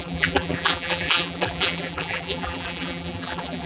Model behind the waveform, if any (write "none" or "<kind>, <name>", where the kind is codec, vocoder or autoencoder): vocoder, BigVGAN v2